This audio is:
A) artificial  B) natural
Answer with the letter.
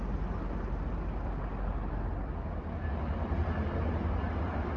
B